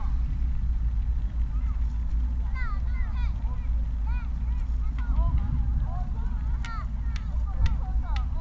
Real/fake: real